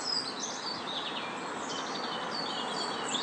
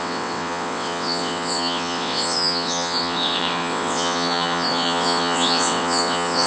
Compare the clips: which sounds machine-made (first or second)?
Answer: second